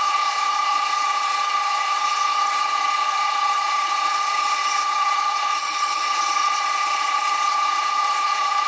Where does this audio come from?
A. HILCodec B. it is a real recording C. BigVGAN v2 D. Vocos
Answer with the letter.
A